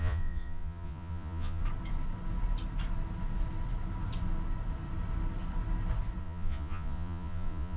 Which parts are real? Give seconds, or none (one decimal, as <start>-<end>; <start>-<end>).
1.6-6.2